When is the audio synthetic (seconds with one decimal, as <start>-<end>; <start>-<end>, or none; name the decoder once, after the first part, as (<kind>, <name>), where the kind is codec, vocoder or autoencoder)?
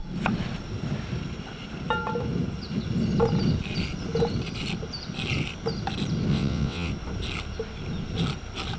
6.3-6.9 (vocoder, WaveNeXt)